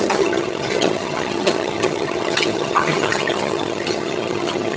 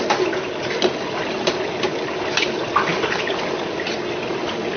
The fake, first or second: first